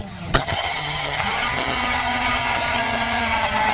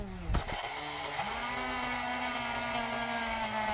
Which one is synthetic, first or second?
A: first